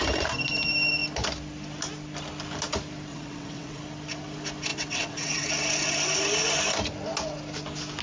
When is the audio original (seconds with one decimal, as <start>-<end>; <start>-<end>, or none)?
0.0-3.1; 3.8-4.7; 5.5-8.0

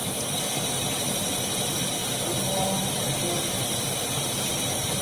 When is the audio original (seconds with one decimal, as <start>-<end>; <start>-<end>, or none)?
0.0-5.0

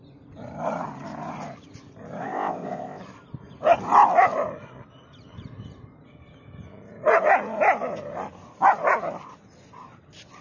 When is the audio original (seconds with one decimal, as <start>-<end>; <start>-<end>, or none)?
0.0-2.2; 3.0-10.4

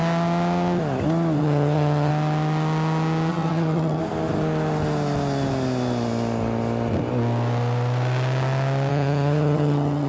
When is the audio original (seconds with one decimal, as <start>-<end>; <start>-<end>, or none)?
0.0-1.4; 2.1-3.3; 4.0-8.9